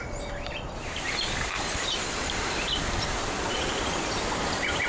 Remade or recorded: remade